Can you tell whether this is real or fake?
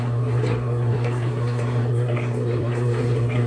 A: fake